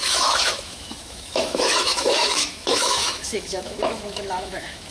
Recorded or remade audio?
remade